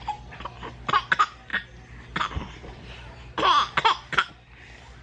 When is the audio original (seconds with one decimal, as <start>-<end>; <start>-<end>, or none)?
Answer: 0.0-5.0